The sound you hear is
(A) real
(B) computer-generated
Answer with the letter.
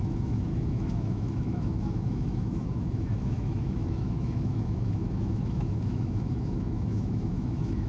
B